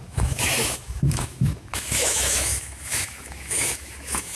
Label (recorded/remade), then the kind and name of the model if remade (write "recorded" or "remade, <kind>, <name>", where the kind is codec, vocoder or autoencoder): remade, autoencoder, DAC-VAE